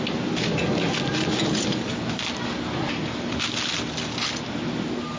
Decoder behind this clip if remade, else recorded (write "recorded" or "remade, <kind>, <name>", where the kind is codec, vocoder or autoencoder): recorded